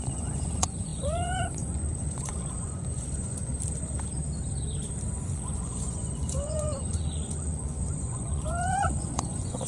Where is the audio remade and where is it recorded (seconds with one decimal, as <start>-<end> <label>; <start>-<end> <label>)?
0.0-3.5 remade; 3.5-5.2 recorded; 5.2-9.7 remade